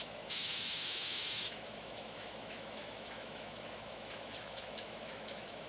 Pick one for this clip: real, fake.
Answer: fake